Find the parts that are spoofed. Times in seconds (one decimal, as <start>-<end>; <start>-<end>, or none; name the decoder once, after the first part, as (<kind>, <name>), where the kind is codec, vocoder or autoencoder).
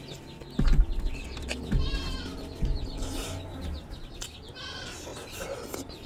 none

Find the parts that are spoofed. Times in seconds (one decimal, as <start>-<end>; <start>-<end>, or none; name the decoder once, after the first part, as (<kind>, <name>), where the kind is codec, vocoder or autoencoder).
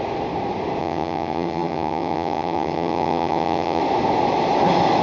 0.8-3.8 (vocoder, HiFi-GAN)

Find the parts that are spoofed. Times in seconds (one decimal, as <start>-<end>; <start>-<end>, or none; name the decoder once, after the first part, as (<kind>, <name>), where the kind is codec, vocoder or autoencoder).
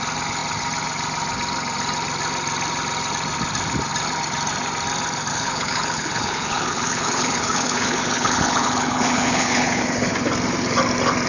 5.3-10.1 (codec, HILCodec)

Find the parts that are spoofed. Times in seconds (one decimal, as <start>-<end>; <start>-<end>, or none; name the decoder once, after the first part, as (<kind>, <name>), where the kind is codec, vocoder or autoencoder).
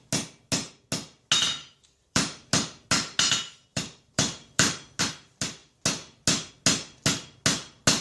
1.6-2.5 (vocoder, BigVGAN v2); 3.7-5.0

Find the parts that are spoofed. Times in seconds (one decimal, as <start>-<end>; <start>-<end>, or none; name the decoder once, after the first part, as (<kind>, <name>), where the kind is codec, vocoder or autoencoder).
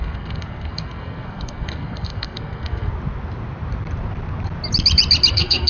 0.0-2.9 (codec, SNAC); 5.3-5.7